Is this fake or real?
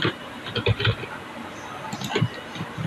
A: real